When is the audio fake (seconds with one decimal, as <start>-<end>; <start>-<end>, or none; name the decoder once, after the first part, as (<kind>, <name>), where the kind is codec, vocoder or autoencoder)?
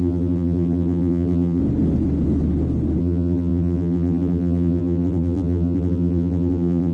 0.0-1.6 (vocoder, BigVGAN v2); 3.0-6.9